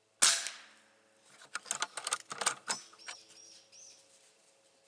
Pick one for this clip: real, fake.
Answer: real